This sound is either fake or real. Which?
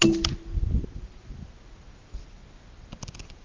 real